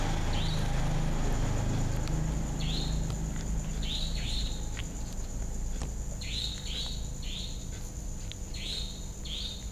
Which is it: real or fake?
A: real